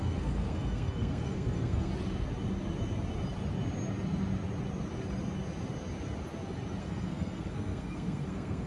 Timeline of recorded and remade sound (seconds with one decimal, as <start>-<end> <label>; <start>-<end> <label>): 0.0-1.9 remade; 1.9-6.8 recorded; 6.8-8.7 remade